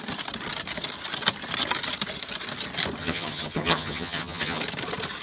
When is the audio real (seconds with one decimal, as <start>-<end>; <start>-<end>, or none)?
0.0-3.0; 4.6-5.2